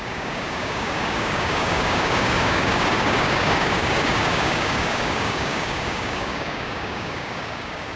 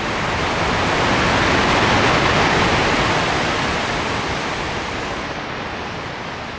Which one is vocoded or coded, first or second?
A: first